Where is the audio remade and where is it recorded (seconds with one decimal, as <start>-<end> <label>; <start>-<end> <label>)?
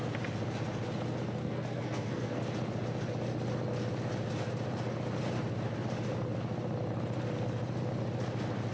0.0-1.4 recorded; 1.4-2.4 remade; 2.4-8.7 recorded